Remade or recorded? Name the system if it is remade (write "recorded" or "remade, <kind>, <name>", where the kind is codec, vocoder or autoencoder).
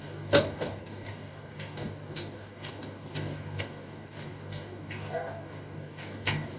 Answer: remade, codec, DAC